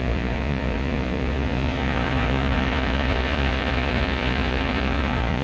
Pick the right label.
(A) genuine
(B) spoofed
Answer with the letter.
B